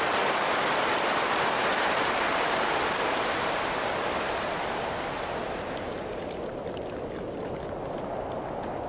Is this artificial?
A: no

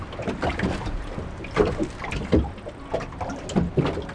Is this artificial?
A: no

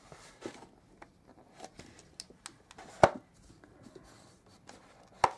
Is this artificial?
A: no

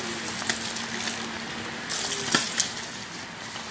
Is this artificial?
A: no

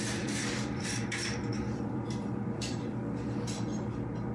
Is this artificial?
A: yes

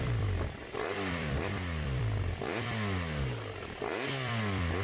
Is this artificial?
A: yes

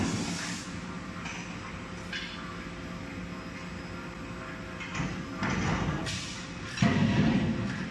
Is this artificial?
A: no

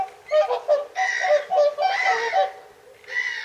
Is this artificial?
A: no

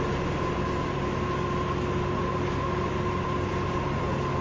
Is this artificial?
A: no